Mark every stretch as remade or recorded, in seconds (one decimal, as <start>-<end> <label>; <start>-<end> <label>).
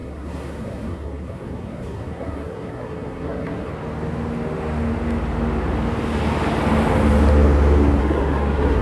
0.0-3.7 remade; 3.7-8.0 recorded; 8.0-8.8 remade